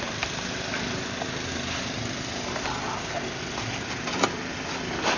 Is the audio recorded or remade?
recorded